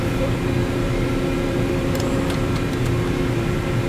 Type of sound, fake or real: fake